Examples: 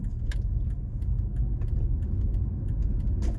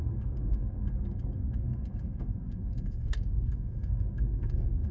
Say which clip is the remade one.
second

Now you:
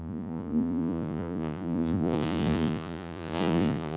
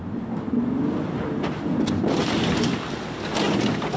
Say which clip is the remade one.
first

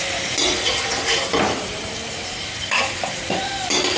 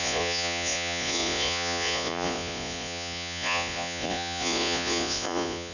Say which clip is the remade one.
second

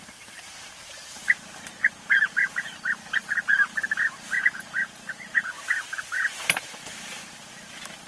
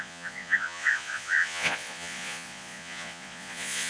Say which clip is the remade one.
second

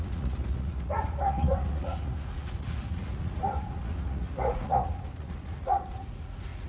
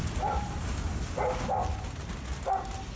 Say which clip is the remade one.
first